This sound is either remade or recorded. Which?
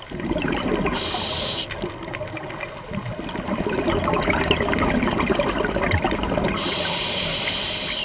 recorded